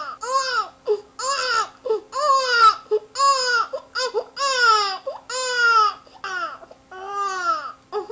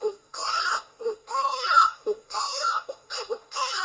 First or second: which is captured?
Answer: first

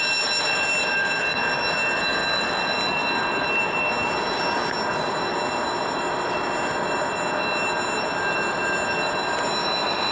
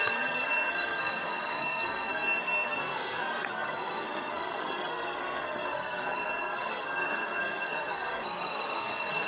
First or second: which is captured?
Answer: first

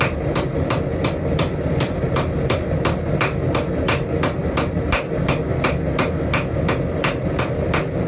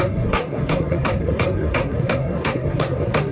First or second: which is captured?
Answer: first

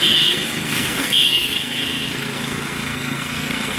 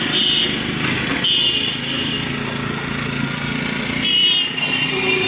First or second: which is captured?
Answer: second